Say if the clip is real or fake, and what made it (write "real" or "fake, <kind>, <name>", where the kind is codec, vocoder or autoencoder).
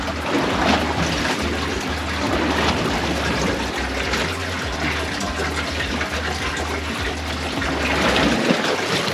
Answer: real